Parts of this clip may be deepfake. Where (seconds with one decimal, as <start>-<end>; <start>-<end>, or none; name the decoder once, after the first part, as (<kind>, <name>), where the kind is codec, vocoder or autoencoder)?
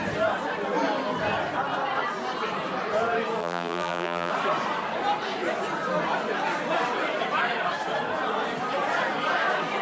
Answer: 3.4-4.3 (vocoder, BigVGAN v2)